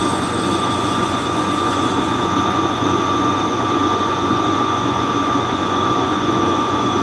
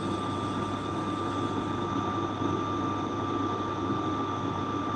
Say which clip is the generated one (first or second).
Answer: first